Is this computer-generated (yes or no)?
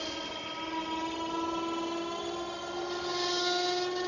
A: no